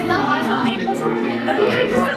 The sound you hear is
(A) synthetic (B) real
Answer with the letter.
A